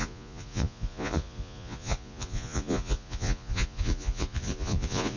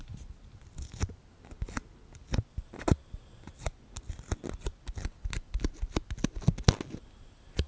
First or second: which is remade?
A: first